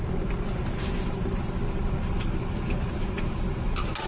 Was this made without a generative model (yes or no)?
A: yes